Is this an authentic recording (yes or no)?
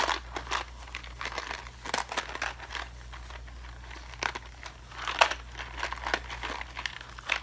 yes